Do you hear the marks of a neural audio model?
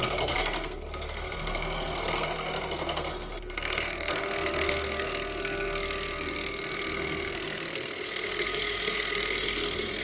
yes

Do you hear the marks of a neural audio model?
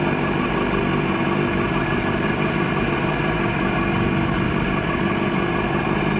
no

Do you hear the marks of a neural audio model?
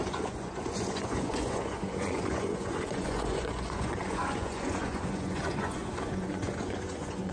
yes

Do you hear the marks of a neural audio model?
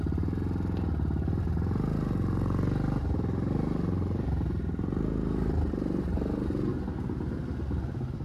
no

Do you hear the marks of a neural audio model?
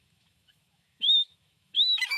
yes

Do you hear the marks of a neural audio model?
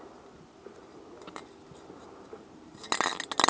no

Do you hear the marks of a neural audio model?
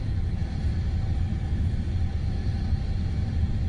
no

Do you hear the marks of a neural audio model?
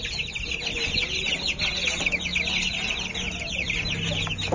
no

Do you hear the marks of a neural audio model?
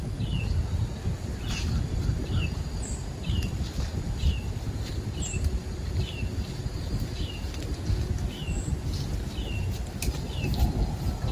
no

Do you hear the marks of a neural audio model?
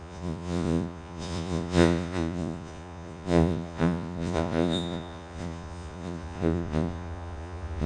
yes